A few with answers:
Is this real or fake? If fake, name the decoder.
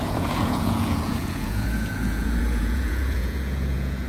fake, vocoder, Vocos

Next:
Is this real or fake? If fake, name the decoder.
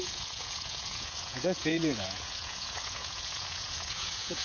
fake, vocoder, Vocos